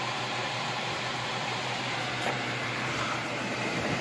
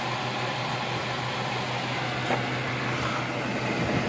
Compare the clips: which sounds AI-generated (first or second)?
first